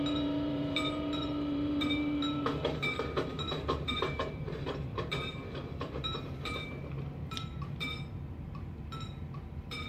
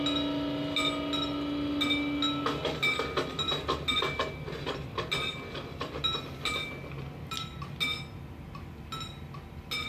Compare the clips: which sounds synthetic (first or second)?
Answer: first